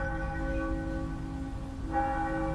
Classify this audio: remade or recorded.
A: recorded